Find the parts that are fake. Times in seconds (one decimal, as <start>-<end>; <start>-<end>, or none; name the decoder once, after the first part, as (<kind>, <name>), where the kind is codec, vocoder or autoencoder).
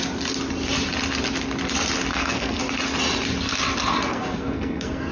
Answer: 2.1-2.6 (codec, SNAC); 4.1-5.1